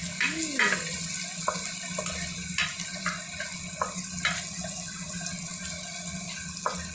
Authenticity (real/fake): real